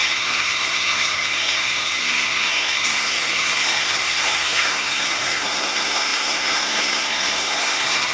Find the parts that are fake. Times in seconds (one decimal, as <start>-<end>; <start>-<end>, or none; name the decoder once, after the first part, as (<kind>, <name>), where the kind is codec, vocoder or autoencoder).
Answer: 0.0-8.1 (codec, SNAC)